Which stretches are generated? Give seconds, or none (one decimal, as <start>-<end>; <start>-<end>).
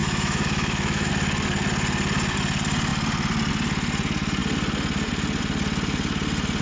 0.0-1.1